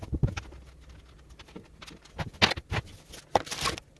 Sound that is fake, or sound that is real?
real